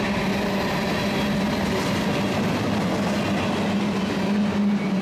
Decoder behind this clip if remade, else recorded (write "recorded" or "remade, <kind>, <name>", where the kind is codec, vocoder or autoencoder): recorded